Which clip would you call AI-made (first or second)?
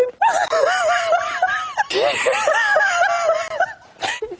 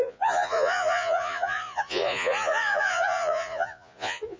second